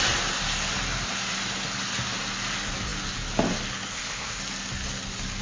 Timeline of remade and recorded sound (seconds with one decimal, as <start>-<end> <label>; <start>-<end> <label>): 0.0-3.9 recorded; 3.9-4.4 remade; 4.4-5.4 recorded